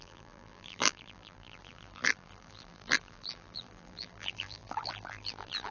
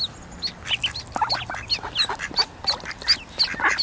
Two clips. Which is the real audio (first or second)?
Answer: second